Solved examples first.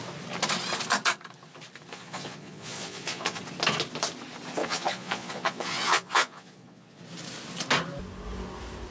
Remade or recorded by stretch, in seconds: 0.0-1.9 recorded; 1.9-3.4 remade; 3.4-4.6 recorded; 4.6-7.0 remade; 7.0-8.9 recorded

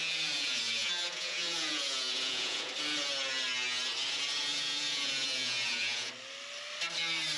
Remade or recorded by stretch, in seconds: 0.0-2.7 remade; 2.7-4.5 recorded; 4.5-6.1 remade; 6.1-7.4 recorded

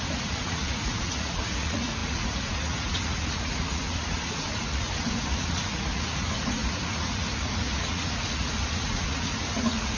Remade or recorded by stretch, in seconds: 0.0-10.0 remade

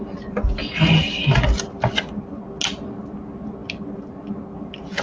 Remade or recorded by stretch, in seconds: 0.0-5.0 recorded

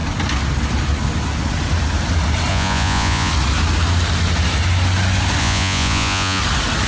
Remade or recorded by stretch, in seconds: 0.0-2.5 recorded; 2.5-3.3 remade; 3.3-5.4 recorded; 5.4-6.4 remade; 6.4-6.9 recorded

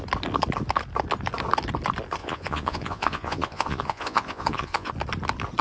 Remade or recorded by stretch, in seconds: 0.0-2.2 recorded; 2.2-4.9 remade; 4.9-5.6 recorded